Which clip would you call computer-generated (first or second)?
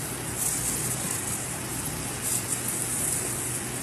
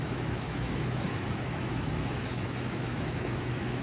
second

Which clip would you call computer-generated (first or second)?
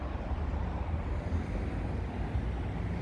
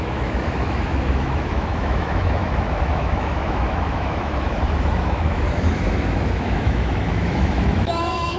second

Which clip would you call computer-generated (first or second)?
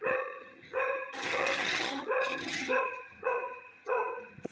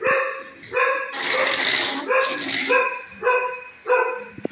first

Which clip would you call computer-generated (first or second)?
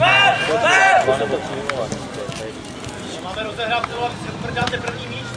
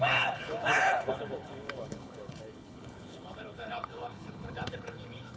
second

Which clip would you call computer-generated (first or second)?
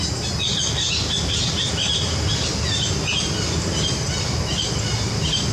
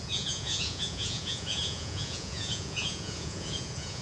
second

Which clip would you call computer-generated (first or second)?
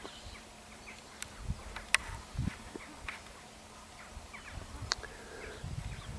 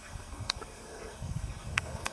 second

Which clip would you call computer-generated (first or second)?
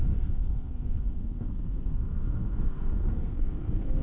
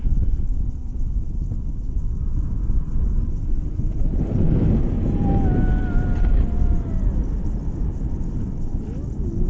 first